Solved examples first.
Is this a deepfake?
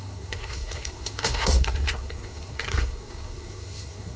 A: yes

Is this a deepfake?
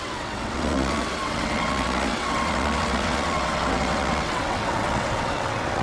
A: yes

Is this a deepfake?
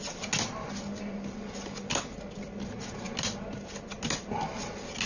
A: no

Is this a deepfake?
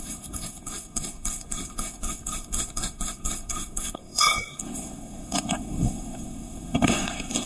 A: yes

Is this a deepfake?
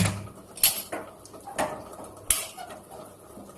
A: no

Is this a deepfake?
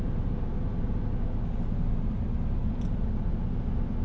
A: no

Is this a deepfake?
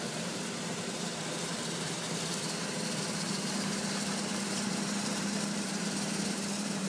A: yes